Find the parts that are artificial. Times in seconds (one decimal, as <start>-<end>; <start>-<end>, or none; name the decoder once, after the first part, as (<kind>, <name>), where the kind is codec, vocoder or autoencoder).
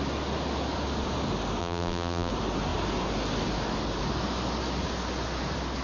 1.6-2.3 (vocoder, BigVGAN v2)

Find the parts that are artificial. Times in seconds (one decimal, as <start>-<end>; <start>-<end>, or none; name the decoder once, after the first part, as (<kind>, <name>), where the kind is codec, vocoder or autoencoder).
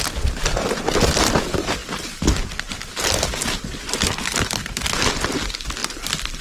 5.8-6.4 (vocoder, BigVGAN v2)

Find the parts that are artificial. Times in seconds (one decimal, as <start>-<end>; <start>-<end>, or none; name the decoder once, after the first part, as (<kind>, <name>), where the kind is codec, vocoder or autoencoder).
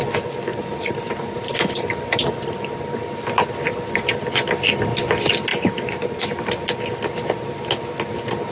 0.5-4.1 (vocoder, BigVGAN v2); 5.5-6.2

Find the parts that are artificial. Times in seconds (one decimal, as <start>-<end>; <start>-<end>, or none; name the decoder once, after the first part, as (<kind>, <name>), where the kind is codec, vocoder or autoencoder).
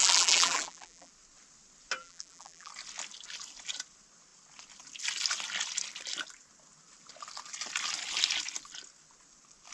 0.0-1.1 (vocoder, BigVGAN v2); 2.0-2.7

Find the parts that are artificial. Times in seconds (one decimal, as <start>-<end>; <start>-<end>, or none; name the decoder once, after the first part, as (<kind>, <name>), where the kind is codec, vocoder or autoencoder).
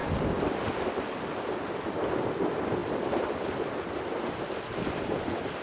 2.8-4.3 (vocoder, BigVGAN v2)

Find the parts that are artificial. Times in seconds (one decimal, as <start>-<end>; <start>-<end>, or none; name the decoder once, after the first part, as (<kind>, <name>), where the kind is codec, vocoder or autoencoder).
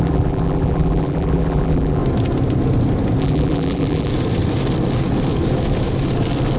0.0-2.0 (vocoder, BigVGAN v2); 3.2-4.1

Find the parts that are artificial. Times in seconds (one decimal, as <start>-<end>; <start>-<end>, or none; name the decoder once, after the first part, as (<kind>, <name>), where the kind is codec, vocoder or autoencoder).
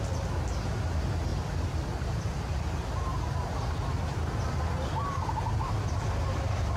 1.3-2.4 (vocoder, BigVGAN v2); 3.1-6.8